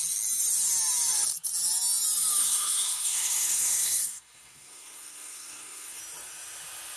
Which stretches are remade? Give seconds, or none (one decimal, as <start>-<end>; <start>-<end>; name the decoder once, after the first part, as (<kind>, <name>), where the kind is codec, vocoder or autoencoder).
2.4-6.0 (codec, SNAC)